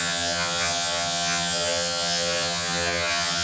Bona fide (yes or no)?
no